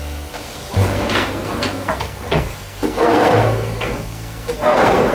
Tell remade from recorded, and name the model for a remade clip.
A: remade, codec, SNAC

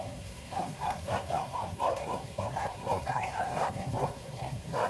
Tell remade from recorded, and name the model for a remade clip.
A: remade, codec, SNAC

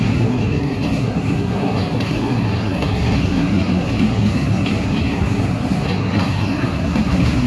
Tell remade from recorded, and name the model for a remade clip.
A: remade, codec, SNAC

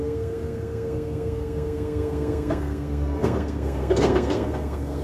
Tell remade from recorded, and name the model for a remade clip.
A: remade, codec, SNAC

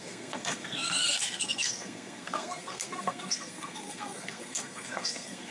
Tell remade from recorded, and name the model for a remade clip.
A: remade, codec, SNAC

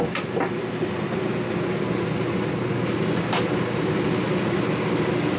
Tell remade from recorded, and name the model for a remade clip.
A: recorded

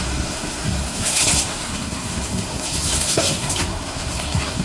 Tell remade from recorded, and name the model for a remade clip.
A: remade, codec, SNAC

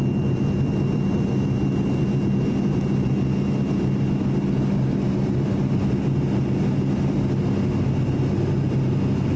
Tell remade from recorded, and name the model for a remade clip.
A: recorded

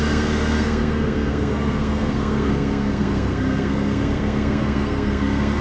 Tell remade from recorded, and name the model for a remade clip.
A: remade, codec, SNAC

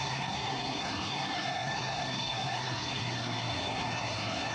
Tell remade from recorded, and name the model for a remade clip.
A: remade, codec, SNAC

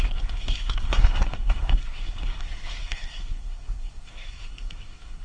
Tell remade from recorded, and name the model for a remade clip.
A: remade, codec, SNAC